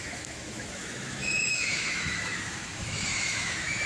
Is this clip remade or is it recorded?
remade